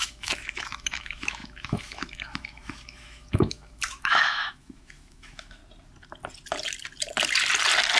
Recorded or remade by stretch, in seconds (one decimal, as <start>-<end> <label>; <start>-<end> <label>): 0.0-5.6 remade; 5.6-8.0 recorded